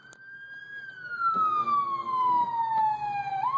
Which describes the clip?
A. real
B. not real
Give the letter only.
A